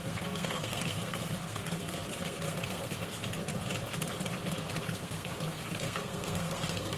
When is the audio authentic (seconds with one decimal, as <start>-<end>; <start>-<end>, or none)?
3.5-4.8